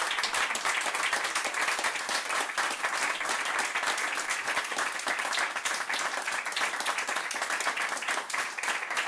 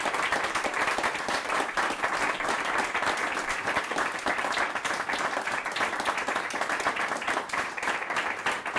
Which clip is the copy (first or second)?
second